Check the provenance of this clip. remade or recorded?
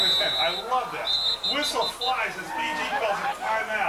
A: recorded